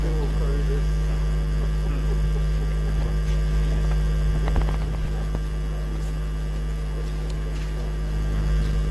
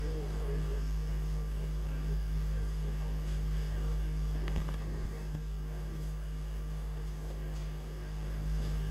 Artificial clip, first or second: second